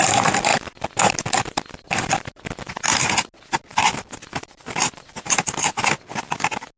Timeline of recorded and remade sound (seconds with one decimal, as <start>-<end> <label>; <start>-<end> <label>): 0.0-6.8 recorded